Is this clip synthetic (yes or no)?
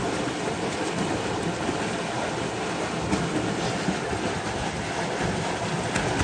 no